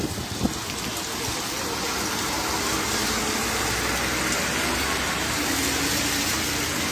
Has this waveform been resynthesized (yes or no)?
no